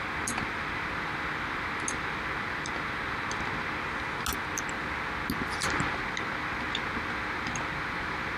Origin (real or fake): real